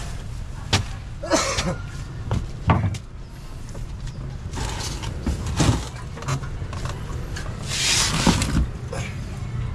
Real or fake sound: real